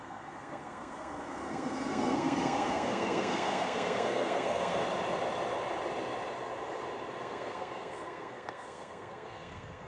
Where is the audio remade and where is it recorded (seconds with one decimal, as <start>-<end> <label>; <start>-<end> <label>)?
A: 0.0-4.8 remade; 4.8-7.2 recorded; 7.2-9.9 remade